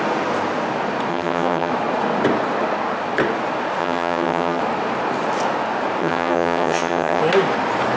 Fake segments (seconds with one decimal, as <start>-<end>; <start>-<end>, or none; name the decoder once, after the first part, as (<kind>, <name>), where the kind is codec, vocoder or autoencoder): 1.1-1.7 (vocoder, HiFi-GAN); 3.8-4.6; 6.0-7.2